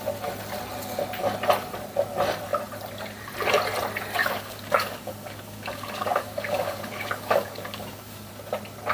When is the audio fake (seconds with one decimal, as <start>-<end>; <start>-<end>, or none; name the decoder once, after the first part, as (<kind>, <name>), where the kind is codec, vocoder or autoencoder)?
4.2-8.3 (codec, DAC)